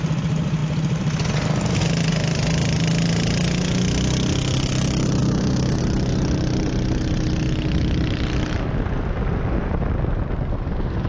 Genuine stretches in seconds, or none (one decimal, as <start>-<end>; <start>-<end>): 0.0-5.2; 5.8-11.1